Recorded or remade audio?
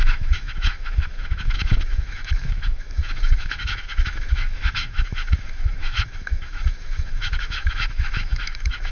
remade